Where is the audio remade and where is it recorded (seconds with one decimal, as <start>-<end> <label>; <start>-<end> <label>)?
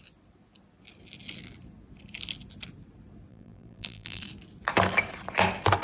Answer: 0.0-3.3 recorded; 3.3-4.2 remade; 4.2-5.8 recorded